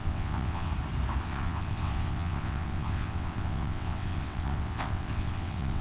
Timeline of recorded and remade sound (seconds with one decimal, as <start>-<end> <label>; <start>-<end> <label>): 0.0-0.7 remade; 0.7-1.2 recorded; 1.2-5.8 remade